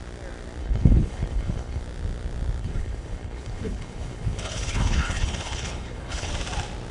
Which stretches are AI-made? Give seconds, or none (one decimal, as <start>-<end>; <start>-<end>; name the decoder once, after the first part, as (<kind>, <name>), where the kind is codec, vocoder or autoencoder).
0.6-1.8 (codec, HILCodec); 2.6-6.3